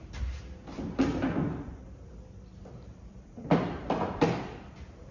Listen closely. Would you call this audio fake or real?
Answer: real